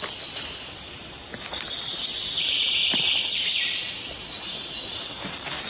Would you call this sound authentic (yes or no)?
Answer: no